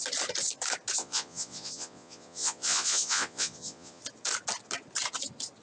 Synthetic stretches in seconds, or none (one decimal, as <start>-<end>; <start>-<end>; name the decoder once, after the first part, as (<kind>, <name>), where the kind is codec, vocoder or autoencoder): 1.0-4.0 (vocoder, Vocos)